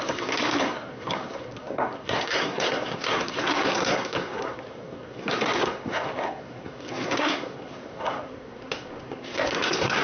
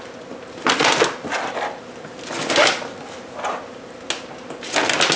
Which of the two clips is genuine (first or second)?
second